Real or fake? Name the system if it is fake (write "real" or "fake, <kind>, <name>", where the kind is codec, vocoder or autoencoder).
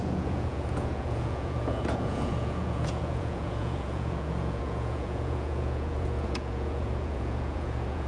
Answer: fake, vocoder, Vocos